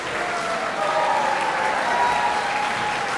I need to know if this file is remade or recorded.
recorded